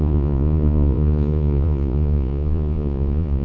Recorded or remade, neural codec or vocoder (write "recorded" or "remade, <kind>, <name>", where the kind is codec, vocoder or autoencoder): remade, vocoder, Vocos